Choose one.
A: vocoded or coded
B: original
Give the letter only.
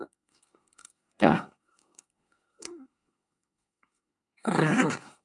A